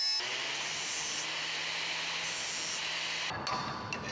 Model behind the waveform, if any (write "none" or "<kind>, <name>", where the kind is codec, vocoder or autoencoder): none